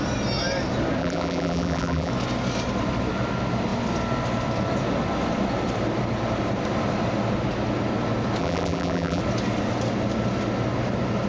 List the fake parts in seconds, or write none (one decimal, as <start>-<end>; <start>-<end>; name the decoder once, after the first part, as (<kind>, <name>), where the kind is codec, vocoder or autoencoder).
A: 1.0-2.1 (vocoder, BigVGAN v2); 8.4-9.2